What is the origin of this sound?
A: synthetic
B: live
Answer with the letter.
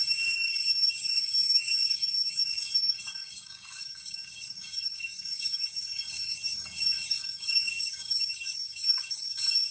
A